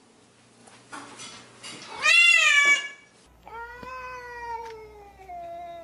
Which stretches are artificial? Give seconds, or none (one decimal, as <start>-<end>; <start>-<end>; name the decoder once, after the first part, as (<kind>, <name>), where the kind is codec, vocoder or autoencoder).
3.4-3.9 (codec, SNAC)